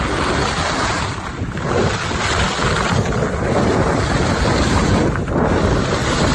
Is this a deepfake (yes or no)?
no